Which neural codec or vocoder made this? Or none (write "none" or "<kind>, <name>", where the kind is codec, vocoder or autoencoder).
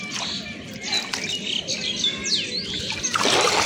none